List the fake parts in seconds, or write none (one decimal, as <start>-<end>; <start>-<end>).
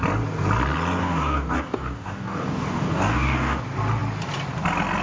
1.0-3.6